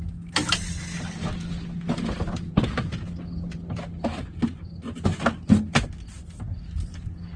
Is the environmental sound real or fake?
real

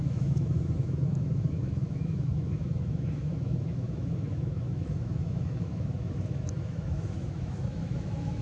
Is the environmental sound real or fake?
fake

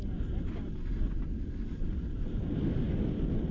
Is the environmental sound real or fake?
real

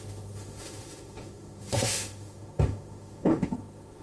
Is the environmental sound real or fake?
fake